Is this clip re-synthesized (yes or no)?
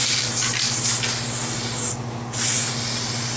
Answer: no